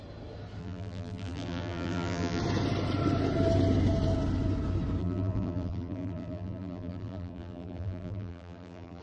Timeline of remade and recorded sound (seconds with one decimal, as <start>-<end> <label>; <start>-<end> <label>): 0.0-0.6 recorded; 0.6-2.4 remade; 2.4-5.0 recorded; 5.0-9.0 remade